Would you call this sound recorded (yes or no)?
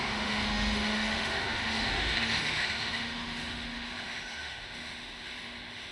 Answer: no